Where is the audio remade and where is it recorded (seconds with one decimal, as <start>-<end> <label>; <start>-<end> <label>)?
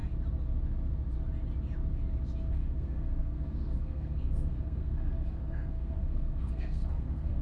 0.0-2.5 recorded; 2.5-7.4 remade